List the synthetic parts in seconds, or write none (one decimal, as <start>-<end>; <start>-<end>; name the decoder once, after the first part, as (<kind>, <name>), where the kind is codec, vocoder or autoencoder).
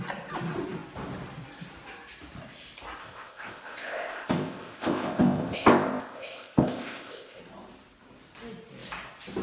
3.0-7.4 (codec, ZipCodec)